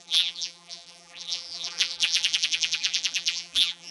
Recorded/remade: remade